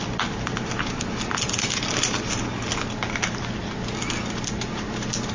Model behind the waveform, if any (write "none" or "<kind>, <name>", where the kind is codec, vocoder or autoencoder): none